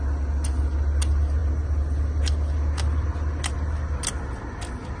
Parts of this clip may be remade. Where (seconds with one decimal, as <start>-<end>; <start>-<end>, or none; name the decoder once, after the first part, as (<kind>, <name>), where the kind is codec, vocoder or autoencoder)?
none